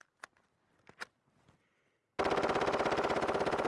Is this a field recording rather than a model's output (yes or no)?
yes